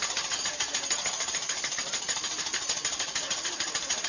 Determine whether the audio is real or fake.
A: real